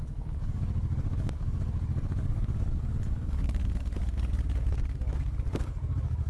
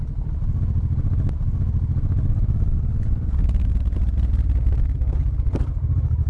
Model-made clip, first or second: first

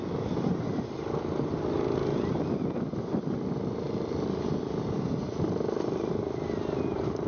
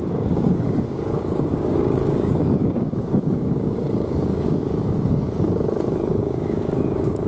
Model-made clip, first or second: second